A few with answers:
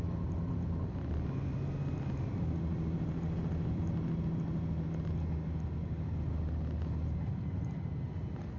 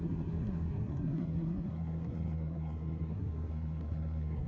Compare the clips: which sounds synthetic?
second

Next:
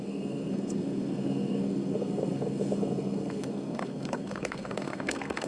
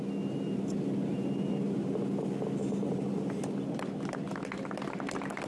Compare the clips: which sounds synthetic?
first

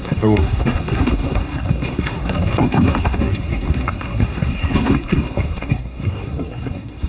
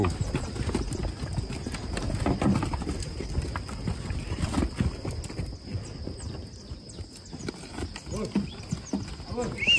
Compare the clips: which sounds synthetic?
first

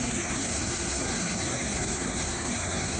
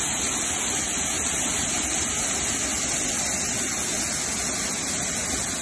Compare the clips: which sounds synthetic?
first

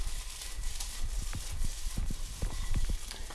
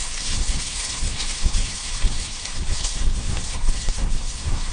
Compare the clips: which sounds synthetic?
second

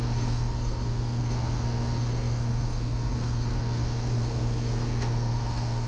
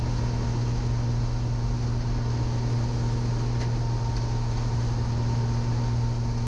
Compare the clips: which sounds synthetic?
first